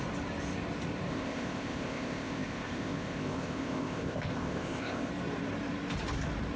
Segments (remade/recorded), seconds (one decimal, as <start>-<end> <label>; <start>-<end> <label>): 0.0-1.1 recorded; 1.1-5.1 remade; 5.1-6.6 recorded